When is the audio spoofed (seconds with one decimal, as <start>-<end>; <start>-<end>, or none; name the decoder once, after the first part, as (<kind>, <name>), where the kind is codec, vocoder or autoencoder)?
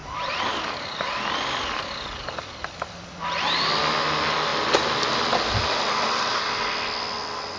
0.0-3.9 (vocoder, BigVGAN v2); 4.5-5.8